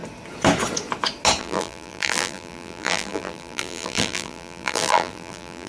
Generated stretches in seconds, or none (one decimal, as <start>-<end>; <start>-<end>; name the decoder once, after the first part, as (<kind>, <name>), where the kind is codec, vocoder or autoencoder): 1.4-5.7 (vocoder, BigVGAN v2)